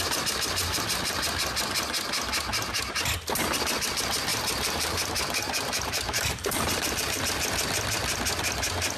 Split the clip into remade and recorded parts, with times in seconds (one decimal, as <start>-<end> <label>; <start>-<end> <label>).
0.0-0.6 recorded; 0.6-1.3 remade; 1.3-4.3 recorded; 4.3-7.2 remade; 7.2-9.0 recorded